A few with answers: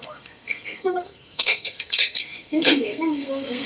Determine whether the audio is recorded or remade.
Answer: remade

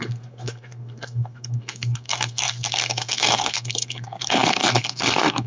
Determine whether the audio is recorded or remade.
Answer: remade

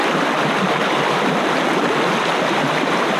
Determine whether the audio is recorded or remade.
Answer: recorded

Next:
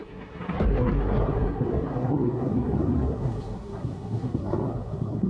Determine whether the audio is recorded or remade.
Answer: remade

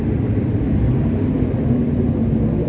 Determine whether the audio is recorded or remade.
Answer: remade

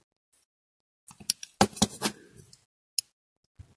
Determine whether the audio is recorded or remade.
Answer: recorded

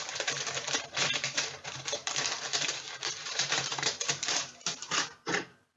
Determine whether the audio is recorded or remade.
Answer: remade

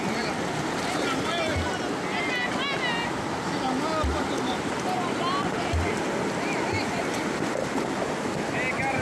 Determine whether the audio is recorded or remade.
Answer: recorded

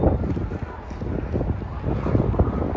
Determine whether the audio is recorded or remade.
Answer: recorded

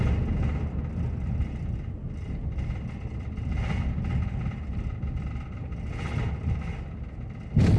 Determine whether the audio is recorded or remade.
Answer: recorded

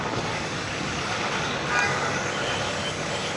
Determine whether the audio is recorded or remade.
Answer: remade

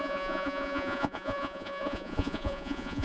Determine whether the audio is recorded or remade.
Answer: remade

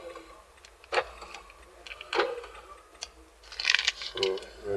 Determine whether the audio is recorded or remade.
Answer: recorded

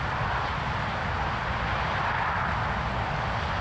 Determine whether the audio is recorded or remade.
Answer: recorded